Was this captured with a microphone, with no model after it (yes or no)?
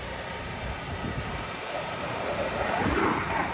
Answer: no